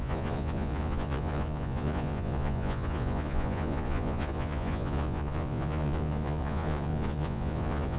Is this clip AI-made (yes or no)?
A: yes